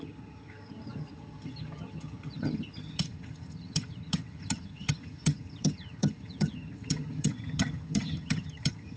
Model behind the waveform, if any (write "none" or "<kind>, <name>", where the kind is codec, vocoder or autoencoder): vocoder, HiFi-GAN